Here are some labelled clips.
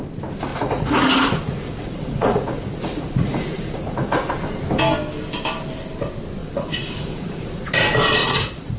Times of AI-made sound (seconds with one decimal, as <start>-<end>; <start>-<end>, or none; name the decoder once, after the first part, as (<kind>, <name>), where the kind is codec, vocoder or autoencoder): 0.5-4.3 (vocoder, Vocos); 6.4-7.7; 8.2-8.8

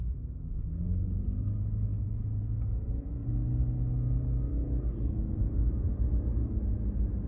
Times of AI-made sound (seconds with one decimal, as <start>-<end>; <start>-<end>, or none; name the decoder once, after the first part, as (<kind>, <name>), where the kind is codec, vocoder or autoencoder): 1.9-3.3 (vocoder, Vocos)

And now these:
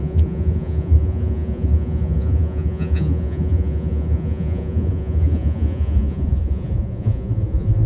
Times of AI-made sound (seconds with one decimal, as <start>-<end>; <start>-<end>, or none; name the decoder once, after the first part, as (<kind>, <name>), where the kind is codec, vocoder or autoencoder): 0.0-7.9 (vocoder, Vocos)